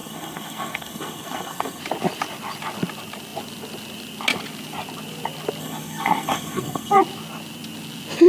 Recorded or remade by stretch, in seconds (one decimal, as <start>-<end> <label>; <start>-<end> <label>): 0.0-1.8 remade; 1.8-5.6 recorded; 5.6-7.0 remade; 7.0-8.3 recorded